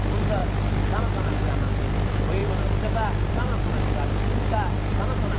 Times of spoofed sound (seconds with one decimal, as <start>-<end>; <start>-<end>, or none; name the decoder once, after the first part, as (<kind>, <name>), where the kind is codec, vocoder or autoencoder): none